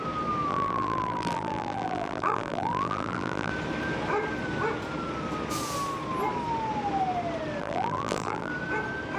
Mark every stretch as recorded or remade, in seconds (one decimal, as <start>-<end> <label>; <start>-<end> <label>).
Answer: 0.0-0.5 recorded; 0.5-3.5 remade; 3.5-7.6 recorded; 7.6-8.5 remade; 8.5-9.2 recorded